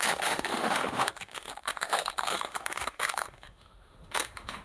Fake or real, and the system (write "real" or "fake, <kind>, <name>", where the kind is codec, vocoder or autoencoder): fake, autoencoder, DAC-VAE